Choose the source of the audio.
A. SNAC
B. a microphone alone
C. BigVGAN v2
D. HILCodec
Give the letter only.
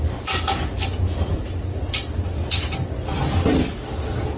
B